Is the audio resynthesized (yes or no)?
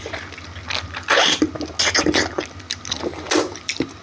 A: no